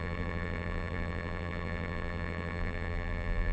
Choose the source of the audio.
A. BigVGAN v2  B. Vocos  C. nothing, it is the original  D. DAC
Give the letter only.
A